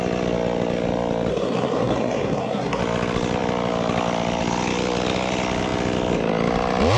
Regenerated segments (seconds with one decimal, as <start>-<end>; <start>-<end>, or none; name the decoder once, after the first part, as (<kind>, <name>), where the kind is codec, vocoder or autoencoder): 1.3-2.8 (codec, SNAC)